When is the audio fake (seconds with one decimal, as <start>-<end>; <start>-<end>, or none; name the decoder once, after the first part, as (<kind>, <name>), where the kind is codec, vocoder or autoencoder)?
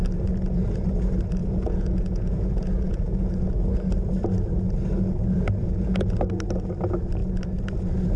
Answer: 1.4-3.3 (vocoder, Vocos); 5.6-6.2